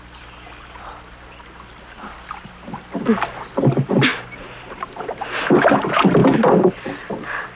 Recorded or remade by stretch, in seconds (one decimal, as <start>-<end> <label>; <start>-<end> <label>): 0.0-7.6 recorded